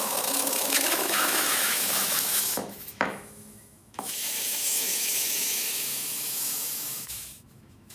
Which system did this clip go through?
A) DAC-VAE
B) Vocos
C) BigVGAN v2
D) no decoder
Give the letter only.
A